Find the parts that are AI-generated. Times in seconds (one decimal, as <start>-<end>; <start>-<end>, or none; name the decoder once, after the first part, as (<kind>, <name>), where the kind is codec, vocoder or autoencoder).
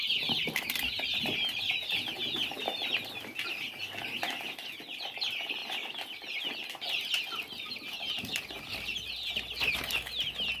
none